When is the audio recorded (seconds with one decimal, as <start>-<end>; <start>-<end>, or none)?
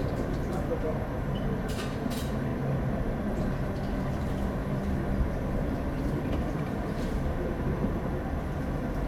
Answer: 4.6-5.3